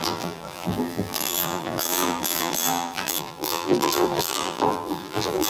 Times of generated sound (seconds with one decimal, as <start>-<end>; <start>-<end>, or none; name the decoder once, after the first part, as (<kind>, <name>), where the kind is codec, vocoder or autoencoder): 0.0-5.5 (vocoder, BigVGAN v2)